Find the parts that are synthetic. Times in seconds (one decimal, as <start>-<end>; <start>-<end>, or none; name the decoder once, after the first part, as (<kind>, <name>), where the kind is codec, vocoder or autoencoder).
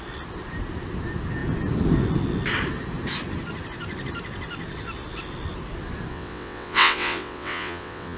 6.1-8.2 (vocoder, WaveNeXt)